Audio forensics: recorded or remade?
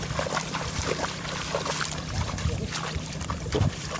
remade